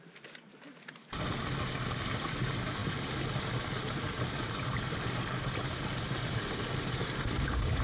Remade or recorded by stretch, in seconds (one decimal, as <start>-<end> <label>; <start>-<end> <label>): 0.0-7.8 recorded